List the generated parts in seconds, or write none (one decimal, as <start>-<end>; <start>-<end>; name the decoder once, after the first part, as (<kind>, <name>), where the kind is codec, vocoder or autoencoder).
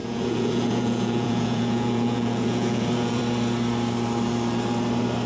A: 0.0-3.2 (vocoder, Vocos)